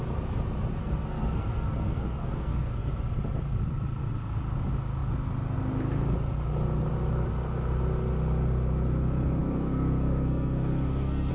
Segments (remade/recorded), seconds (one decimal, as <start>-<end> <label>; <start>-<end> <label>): 0.0-0.8 recorded; 0.8-2.9 remade; 2.9-9.4 recorded; 9.4-11.3 remade